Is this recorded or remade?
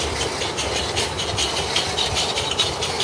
recorded